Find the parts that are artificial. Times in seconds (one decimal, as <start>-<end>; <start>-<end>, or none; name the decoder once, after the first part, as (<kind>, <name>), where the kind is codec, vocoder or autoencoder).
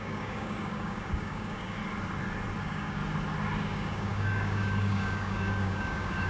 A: 0.0-1.8 (codec, DAC); 2.6-3.0; 3.6-6.3